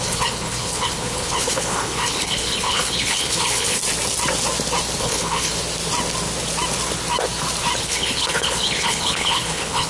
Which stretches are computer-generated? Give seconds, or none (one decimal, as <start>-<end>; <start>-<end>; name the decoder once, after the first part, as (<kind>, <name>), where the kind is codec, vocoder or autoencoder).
0.0-3.8 (codec, HILCodec); 5.0-5.5; 7.8-9.9